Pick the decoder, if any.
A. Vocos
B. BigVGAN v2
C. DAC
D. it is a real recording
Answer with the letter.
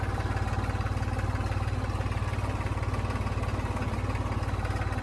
D